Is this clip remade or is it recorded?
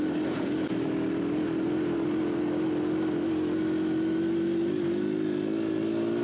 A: recorded